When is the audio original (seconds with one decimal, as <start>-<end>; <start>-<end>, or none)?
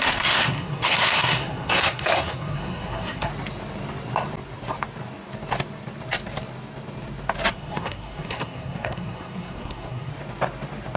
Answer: 3.3-7.5; 10.1-11.0